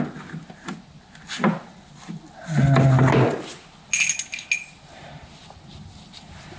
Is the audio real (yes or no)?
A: yes